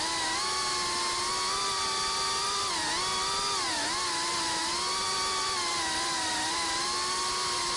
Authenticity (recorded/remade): recorded